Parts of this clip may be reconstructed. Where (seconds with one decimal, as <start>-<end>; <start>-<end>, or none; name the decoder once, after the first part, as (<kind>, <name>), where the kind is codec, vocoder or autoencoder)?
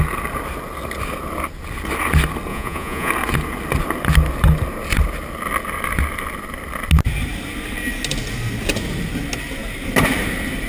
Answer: 2.5-3.1 (vocoder, Vocos)